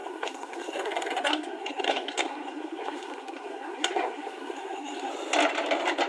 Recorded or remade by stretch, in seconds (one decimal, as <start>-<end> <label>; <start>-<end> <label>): 0.0-5.1 remade; 5.1-6.1 recorded